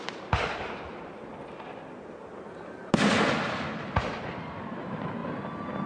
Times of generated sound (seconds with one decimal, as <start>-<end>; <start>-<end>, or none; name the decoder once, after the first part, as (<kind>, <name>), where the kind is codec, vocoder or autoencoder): none